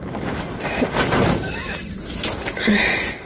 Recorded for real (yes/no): yes